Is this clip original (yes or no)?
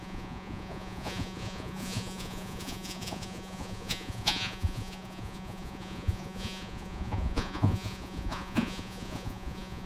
no